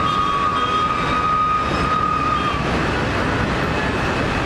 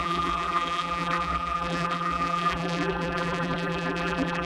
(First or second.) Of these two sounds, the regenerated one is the second